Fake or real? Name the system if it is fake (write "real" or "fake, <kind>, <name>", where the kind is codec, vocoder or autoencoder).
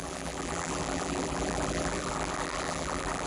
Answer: fake, vocoder, BigVGAN v2